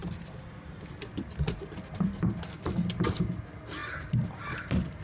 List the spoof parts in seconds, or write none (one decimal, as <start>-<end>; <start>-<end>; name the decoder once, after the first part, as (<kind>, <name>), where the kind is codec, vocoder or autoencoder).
none